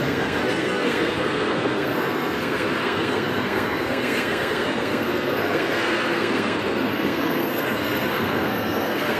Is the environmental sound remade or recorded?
remade